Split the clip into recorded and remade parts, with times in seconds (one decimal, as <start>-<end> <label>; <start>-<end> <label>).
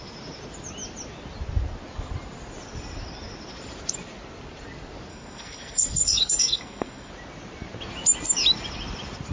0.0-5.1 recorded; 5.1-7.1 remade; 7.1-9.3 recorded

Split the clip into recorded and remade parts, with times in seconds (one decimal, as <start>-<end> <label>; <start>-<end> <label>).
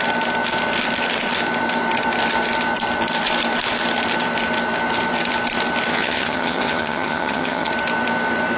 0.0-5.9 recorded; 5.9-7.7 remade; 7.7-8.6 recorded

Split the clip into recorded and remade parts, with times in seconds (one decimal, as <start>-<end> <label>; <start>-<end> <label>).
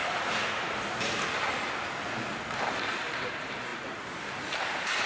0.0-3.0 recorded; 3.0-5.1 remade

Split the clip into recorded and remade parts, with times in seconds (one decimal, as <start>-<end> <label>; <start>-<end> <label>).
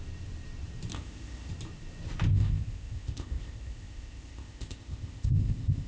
0.0-0.9 recorded; 0.9-1.5 remade; 1.5-2.3 recorded; 2.3-5.9 remade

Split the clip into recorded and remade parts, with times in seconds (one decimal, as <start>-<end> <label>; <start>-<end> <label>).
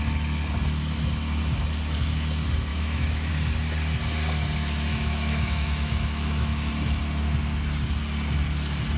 0.0-2.7 recorded; 2.7-3.3 remade; 3.3-4.9 recorded; 4.9-6.7 remade; 6.7-9.0 recorded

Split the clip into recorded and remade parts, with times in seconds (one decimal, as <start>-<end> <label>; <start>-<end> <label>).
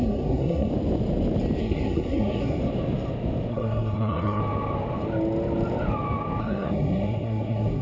0.0-0.7 remade; 0.7-1.6 recorded; 1.6-2.6 remade; 2.6-3.5 recorded; 3.5-4.4 remade; 4.4-6.4 recorded; 6.4-7.8 remade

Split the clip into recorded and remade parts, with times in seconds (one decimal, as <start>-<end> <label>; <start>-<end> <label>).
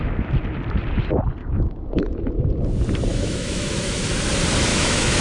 0.0-1.4 recorded; 1.4-2.3 remade; 2.3-3.1 recorded; 3.1-4.1 remade; 4.1-4.7 recorded; 4.7-5.2 remade